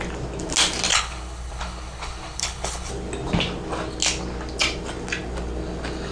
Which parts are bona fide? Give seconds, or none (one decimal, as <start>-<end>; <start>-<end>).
0.0-0.9; 2.9-6.1